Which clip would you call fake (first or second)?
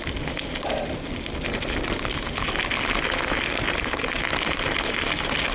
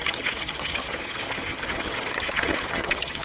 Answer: second